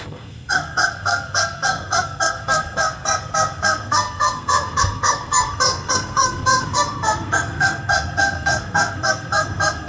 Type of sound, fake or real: fake